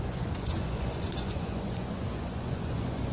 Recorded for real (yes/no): no